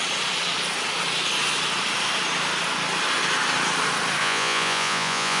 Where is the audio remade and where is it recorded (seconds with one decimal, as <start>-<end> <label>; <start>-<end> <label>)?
0.0-4.2 recorded; 4.2-5.4 remade